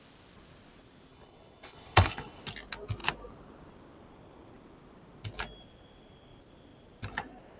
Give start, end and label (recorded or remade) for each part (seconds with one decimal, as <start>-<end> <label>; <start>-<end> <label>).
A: 0.0-1.1 recorded; 1.1-2.4 remade; 2.4-7.6 recorded